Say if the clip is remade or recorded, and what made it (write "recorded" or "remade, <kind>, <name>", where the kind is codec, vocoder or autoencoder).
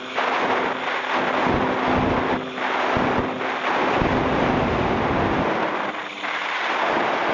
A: recorded